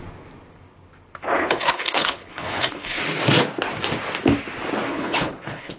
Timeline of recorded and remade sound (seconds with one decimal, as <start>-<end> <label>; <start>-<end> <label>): 0.0-1.4 recorded; 1.4-3.0 remade; 3.0-4.9 recorded; 4.9-5.8 remade